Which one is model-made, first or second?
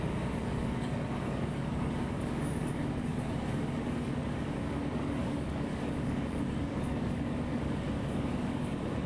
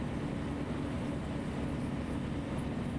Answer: first